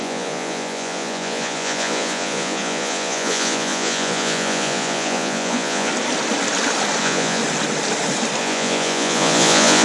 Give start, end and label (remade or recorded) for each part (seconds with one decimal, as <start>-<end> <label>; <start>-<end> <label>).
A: 0.0-5.9 remade; 5.9-7.0 recorded; 7.0-7.4 remade; 7.4-8.4 recorded; 8.4-9.8 remade